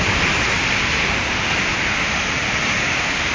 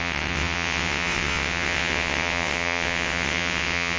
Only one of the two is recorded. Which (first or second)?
first